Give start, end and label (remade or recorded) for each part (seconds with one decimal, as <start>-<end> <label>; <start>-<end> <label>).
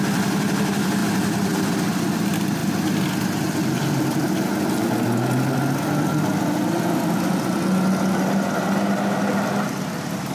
0.0-10.3 recorded